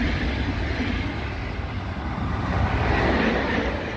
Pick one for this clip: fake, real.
real